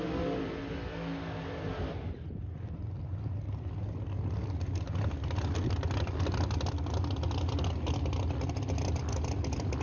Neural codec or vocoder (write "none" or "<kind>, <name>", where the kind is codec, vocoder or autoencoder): none